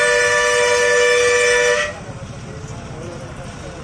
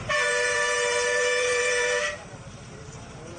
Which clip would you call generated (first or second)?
second